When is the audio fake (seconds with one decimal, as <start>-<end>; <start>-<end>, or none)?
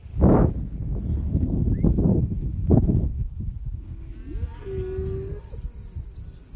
1.1-1.7; 2.1-4.1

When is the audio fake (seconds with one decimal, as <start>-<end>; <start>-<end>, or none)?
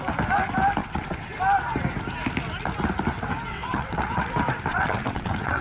0.8-1.4; 3.5-4.3; 4.7-5.6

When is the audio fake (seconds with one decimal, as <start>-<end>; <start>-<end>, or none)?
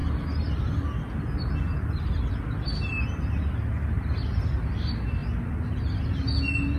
none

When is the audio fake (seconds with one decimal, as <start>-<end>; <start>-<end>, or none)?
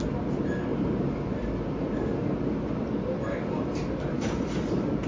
none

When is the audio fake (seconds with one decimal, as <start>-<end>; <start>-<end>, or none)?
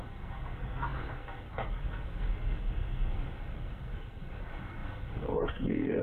0.0-6.0